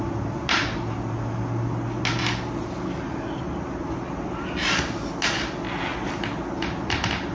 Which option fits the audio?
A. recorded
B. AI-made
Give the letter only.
A